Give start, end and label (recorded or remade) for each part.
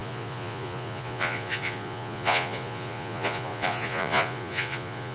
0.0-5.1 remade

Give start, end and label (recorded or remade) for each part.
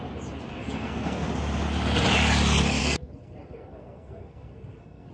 0.0-0.5 recorded; 0.5-1.3 remade; 1.3-2.8 recorded; 2.8-5.1 remade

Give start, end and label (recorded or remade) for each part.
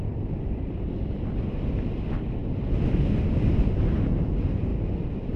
0.0-5.4 recorded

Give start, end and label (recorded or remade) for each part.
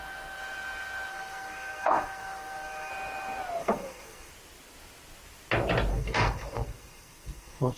0.0-1.1 recorded; 1.1-2.9 remade; 2.9-3.6 recorded; 3.6-4.3 remade; 4.3-5.9 recorded; 5.9-7.8 remade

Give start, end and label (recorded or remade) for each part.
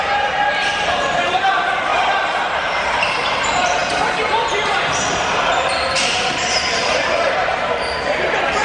0.0-7.5 remade; 7.5-8.6 recorded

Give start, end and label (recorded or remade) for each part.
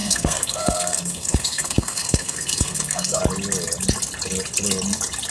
0.0-3.2 remade; 3.2-5.3 recorded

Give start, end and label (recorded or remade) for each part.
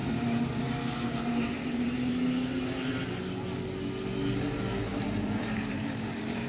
0.0-2.1 remade; 2.1-4.9 recorded; 4.9-6.5 remade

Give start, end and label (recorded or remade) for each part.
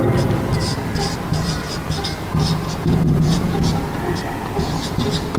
0.0-2.8 recorded; 2.8-3.7 remade; 3.7-5.4 recorded